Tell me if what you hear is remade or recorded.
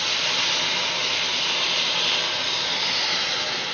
recorded